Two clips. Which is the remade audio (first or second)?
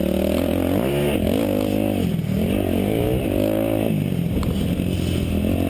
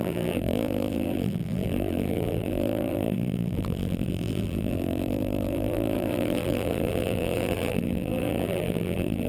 second